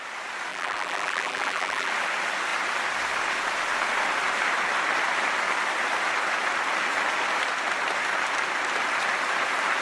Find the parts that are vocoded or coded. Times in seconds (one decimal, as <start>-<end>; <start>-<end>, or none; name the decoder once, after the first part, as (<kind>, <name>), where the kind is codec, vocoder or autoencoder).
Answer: 0.5-1.9 (vocoder, BigVGAN v2)